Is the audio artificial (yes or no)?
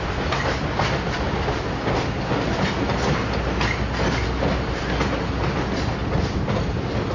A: no